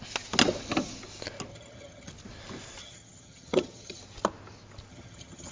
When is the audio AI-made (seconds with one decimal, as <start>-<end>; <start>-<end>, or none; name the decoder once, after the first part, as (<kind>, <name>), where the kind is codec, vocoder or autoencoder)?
1.5-2.1 (vocoder, HiFi-GAN); 2.8-4.0; 4.9-5.5